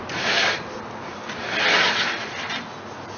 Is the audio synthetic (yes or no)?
no